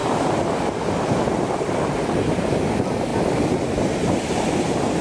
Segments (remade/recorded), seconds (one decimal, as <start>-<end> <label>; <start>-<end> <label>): 0.0-5.0 recorded